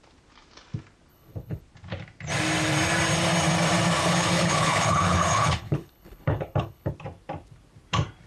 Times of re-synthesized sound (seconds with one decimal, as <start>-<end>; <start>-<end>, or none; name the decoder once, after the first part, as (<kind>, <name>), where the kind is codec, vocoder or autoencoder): 1.1-1.6 (codec, HILCodec); 4.0-6.9